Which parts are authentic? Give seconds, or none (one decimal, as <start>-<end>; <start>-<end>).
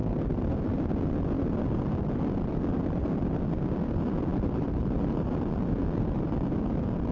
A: 0.0-7.1